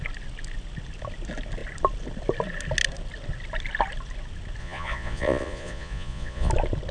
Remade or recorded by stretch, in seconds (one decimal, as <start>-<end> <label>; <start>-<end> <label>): 0.0-4.6 recorded; 4.6-6.5 remade; 6.5-6.9 recorded